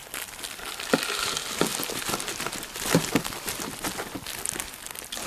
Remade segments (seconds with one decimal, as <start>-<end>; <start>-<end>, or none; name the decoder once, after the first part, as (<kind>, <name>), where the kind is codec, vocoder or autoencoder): 0.0-0.9 (vocoder, BigVGAN v2)